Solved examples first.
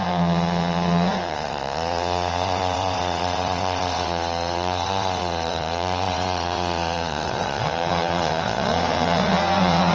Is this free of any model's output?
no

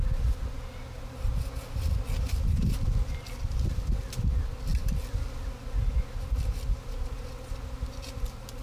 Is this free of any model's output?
yes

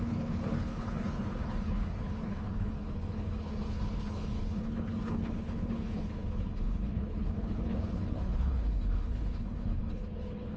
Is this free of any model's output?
no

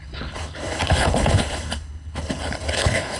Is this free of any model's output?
no